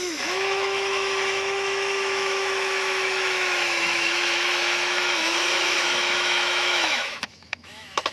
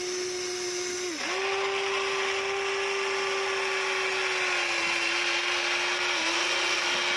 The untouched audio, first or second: second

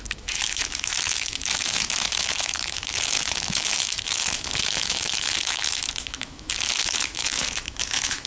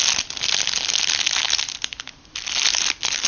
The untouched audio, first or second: second